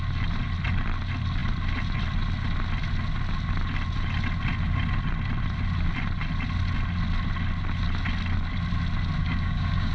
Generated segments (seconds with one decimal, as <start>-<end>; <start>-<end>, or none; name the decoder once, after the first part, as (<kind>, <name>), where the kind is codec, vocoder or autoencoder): 9.2-9.9 (codec, DAC)

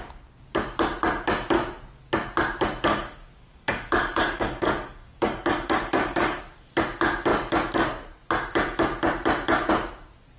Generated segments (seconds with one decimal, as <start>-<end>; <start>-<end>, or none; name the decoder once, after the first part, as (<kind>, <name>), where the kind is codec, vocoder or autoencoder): 2.9-6.4 (codec, DAC)

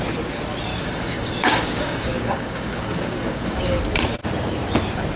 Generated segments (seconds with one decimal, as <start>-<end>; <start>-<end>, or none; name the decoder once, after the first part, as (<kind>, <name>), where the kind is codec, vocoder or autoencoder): 0.7-3.8 (codec, DAC)